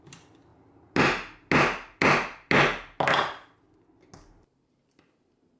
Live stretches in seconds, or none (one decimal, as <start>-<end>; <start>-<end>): 0.0-5.6